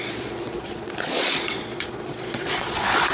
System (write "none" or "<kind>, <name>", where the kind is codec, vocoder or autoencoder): vocoder, Vocos